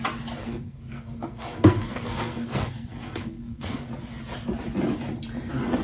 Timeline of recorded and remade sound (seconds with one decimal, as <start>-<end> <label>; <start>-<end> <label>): 0.0-0.4 recorded; 0.4-3.9 remade; 3.9-5.8 recorded